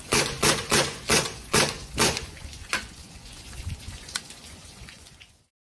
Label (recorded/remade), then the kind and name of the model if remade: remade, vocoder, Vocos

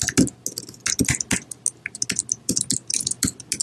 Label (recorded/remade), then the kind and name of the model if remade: recorded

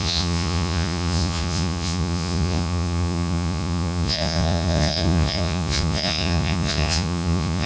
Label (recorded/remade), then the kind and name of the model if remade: remade, vocoder, Vocos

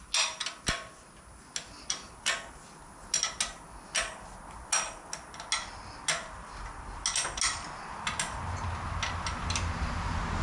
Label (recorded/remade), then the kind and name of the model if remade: recorded